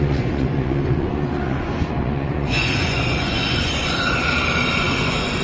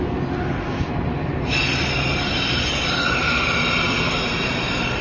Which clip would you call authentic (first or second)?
second